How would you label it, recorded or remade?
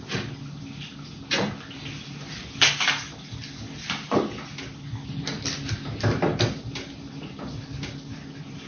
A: recorded